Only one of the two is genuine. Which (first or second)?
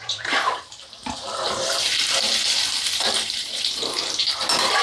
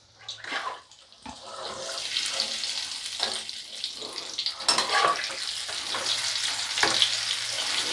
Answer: second